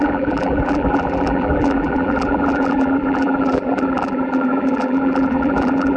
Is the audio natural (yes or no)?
no